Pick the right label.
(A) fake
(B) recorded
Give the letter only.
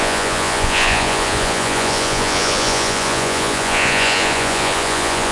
A